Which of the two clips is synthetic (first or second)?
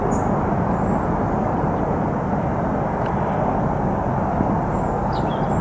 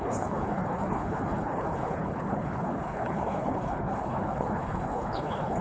second